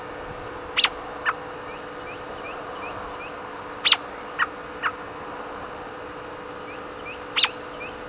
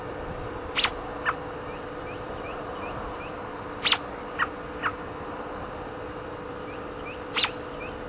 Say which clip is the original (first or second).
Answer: first